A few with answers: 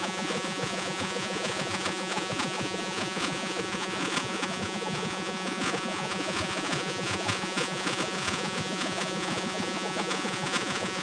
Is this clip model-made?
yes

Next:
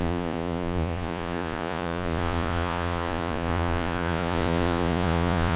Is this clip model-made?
yes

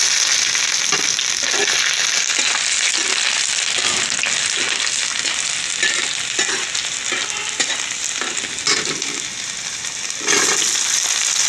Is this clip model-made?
no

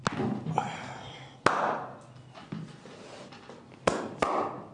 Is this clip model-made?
no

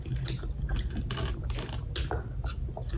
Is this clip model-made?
no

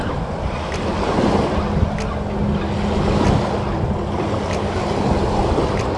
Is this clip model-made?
no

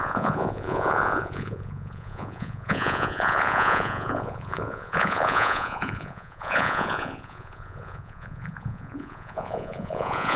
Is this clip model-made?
yes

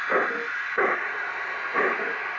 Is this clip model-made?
no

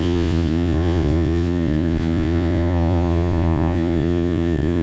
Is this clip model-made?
yes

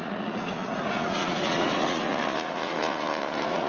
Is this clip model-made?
yes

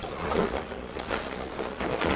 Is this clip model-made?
yes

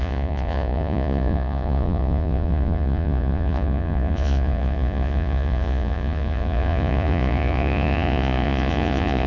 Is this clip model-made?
yes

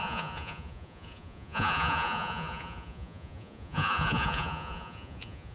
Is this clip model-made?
yes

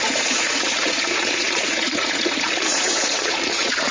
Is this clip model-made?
yes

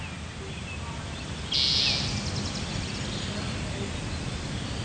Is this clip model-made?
no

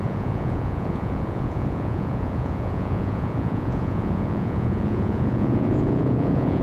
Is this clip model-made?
yes